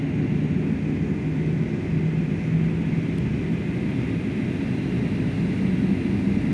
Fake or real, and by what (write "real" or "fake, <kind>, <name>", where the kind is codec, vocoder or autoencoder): real